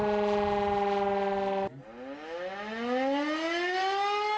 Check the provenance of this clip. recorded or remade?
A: recorded